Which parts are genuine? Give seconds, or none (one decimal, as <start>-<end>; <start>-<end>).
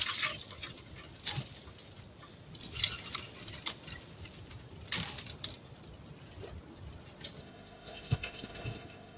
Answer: 0.0-7.4